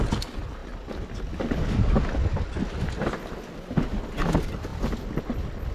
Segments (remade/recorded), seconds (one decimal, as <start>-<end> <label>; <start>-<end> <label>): 0.0-5.7 recorded